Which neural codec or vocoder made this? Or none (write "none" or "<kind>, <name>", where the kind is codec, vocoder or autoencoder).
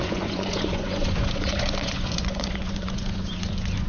vocoder, Vocos